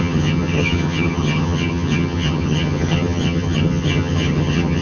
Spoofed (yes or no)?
yes